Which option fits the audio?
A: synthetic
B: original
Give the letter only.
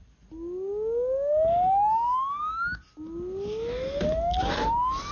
B